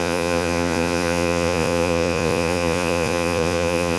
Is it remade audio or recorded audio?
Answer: remade